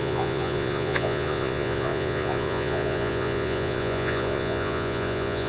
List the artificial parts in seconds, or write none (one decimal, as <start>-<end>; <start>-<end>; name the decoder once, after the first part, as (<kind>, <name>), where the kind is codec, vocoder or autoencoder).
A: 0.0-5.5 (vocoder, Vocos)